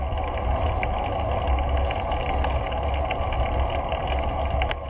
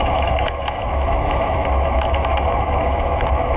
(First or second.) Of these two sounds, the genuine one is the first